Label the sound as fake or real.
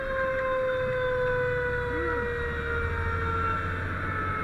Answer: real